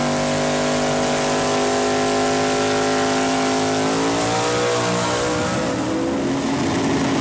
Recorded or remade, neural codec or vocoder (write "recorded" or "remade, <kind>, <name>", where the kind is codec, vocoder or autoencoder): recorded